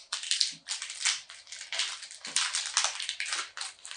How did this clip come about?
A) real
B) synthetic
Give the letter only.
B